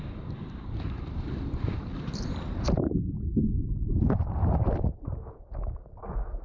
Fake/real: real